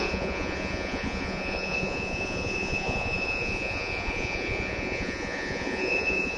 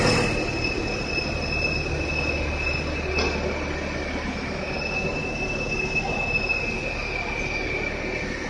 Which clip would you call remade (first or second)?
first